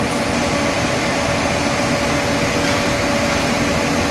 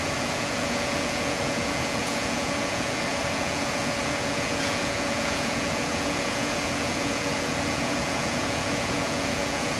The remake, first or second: second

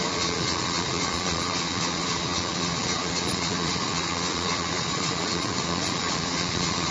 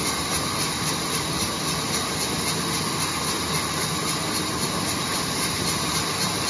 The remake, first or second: first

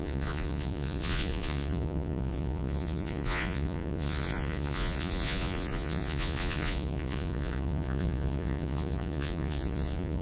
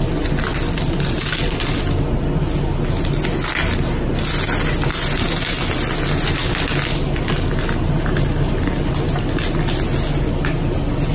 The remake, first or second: first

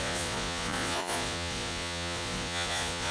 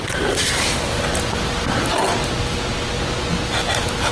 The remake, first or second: first